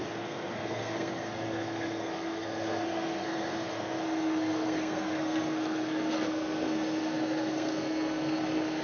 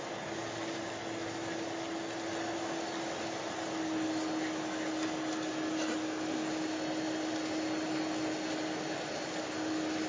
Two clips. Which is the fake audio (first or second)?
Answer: first